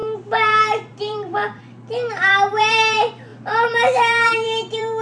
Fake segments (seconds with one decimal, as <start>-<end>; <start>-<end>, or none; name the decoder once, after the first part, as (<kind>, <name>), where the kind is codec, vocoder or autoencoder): 0.0-5.0 (vocoder, BigVGAN v2)